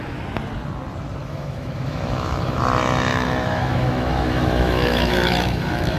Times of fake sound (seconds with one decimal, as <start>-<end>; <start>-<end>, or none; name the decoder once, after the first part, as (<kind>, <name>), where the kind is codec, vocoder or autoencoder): 1.2-2.6 (autoencoder, DAC-VAE); 3.1-6.0